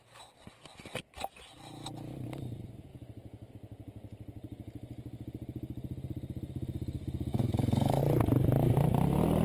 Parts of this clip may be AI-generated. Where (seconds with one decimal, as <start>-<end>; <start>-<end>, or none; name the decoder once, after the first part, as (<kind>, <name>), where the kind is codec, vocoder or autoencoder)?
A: 2.9-3.5 (autoencoder, DAC-VAE); 7.3-8.0